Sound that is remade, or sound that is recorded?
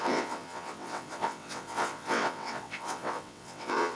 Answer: remade